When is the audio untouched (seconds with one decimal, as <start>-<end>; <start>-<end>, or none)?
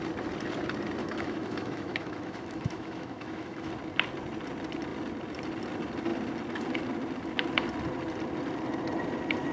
0.0-1.0; 3.7-9.5